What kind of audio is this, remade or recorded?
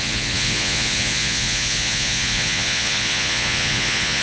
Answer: remade